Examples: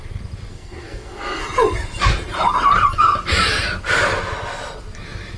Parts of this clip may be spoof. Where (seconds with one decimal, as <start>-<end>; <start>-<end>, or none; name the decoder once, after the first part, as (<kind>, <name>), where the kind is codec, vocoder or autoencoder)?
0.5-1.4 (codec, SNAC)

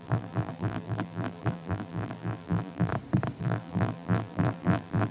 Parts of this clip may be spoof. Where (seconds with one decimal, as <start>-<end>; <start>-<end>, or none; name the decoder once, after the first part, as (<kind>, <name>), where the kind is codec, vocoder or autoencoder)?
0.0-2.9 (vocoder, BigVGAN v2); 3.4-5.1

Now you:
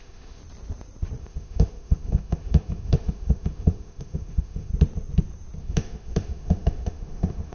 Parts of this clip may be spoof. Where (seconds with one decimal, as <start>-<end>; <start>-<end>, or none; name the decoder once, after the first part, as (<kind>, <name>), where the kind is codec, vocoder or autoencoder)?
0.0-0.4 (autoencoder, DAC-VAE); 1.2-4.7; 5.6-7.5